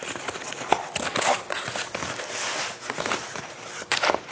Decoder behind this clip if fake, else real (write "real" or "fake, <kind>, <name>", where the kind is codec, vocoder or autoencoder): real